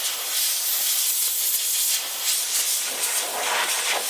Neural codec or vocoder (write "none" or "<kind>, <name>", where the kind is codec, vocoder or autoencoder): none